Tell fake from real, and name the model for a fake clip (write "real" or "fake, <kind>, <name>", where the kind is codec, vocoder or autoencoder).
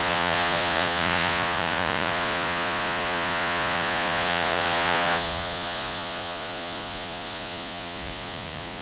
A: fake, vocoder, Vocos